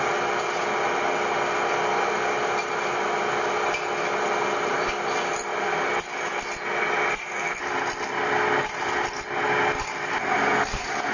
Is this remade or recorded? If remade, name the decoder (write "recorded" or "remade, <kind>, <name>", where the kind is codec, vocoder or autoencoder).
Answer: recorded